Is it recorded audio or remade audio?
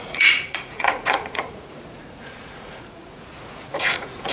remade